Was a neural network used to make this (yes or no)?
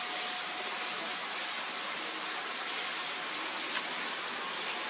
no